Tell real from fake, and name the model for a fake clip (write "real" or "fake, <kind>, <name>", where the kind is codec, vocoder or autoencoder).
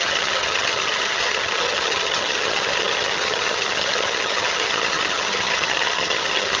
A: fake, vocoder, HiFi-GAN